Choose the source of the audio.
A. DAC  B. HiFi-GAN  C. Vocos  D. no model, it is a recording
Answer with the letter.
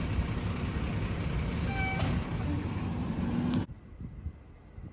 D